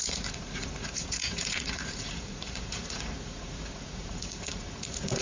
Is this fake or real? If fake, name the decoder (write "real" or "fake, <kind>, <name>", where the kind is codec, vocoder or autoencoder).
fake, vocoder, Vocos